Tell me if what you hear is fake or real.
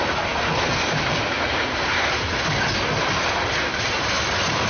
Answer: real